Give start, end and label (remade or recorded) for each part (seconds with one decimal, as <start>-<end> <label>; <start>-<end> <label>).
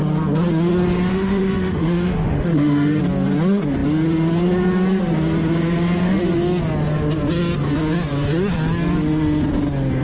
0.0-1.1 recorded; 1.1-3.0 remade; 3.0-10.0 recorded